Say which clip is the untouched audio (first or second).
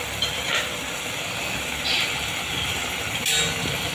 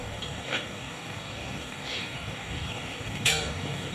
first